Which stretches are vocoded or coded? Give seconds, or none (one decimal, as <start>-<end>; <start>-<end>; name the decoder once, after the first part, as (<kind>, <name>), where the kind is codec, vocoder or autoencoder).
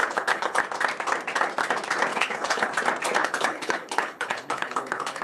0.0-0.6 (codec, HILCodec); 2.1-2.7; 3.2-5.2